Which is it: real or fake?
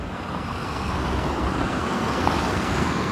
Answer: fake